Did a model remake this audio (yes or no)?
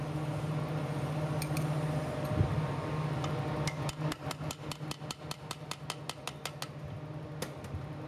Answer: no